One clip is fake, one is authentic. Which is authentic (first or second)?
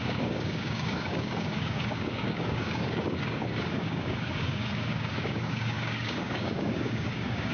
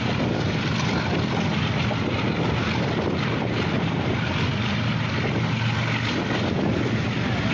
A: second